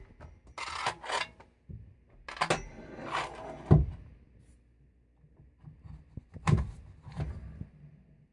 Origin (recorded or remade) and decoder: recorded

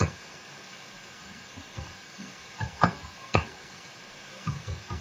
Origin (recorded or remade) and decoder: remade, codec, SNAC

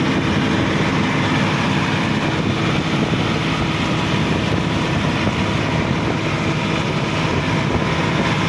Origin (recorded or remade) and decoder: recorded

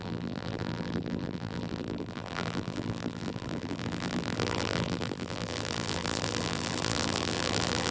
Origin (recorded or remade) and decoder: remade, vocoder, BigVGAN v2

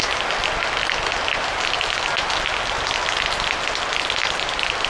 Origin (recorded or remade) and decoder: recorded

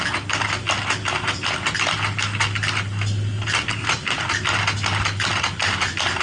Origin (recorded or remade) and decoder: recorded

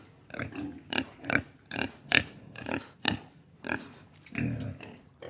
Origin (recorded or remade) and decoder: recorded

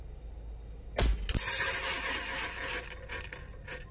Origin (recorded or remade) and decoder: recorded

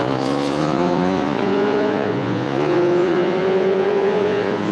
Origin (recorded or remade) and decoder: remade, vocoder, Vocos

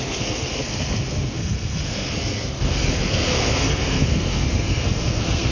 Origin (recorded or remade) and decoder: remade, codec, SNAC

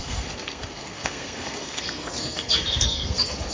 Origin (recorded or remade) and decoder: remade, codec, SNAC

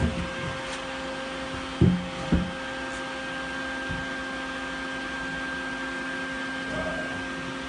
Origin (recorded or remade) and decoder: recorded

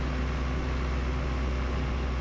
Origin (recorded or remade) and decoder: recorded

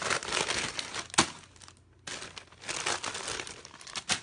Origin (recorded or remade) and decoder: recorded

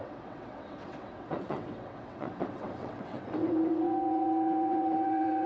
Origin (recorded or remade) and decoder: remade, vocoder, WaveNeXt